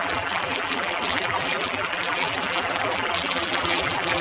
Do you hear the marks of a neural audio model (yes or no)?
yes